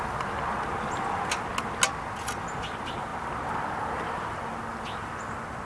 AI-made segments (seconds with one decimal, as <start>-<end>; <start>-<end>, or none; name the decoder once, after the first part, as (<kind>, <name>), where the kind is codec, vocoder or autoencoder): none